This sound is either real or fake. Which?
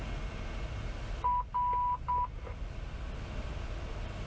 real